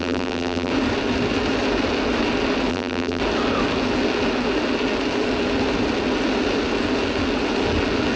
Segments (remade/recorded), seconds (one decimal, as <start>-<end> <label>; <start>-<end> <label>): 0.0-0.7 remade; 0.7-2.7 recorded; 2.7-3.2 remade; 3.2-8.2 recorded